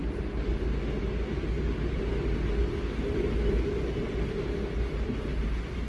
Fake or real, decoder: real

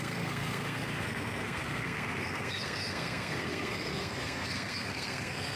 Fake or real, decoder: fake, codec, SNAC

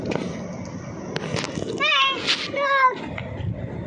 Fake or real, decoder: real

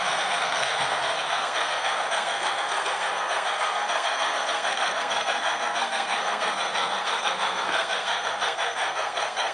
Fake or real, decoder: fake, codec, SNAC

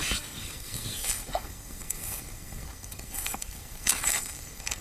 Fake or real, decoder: fake, codec, SNAC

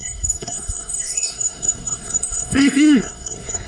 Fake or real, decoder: fake, codec, SNAC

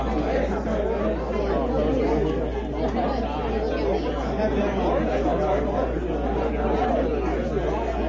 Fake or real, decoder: real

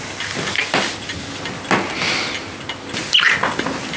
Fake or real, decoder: real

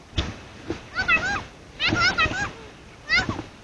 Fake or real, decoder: real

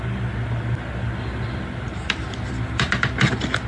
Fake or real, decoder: real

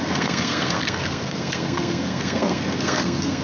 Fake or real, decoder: fake, codec, SNAC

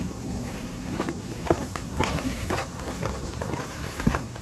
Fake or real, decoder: fake, codec, SNAC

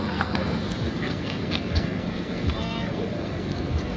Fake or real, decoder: fake, codec, SNAC